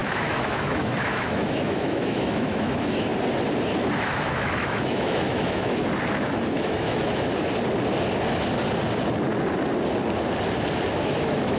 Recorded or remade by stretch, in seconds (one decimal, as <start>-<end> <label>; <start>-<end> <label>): 0.0-3.1 remade; 3.1-3.9 recorded; 3.9-5.8 remade; 5.8-6.5 recorded; 6.5-7.3 remade; 7.3-10.9 recorded; 10.9-11.6 remade